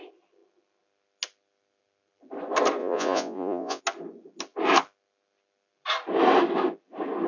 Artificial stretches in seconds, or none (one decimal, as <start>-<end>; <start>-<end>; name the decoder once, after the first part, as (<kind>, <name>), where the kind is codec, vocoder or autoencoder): 2.8-3.8 (vocoder, Vocos)